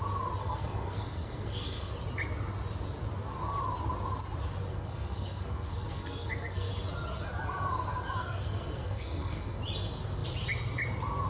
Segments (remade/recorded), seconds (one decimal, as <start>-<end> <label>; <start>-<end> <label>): 0.0-0.4 recorded; 0.4-1.9 remade; 1.9-4.7 recorded; 4.7-6.7 remade; 6.7-8.2 recorded; 8.2-9.6 remade; 9.6-11.3 recorded